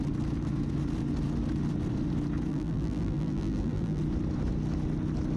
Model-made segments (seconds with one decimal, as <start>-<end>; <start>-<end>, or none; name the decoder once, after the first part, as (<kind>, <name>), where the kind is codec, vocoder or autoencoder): 2.5-4.0 (vocoder, BigVGAN v2)